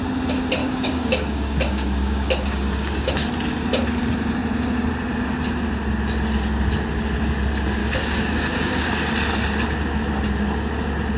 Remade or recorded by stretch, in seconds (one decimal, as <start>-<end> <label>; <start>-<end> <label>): 0.0-0.6 recorded; 0.6-3.1 remade; 3.1-7.8 recorded; 7.8-9.1 remade; 9.1-11.2 recorded